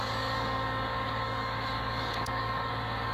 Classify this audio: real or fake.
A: fake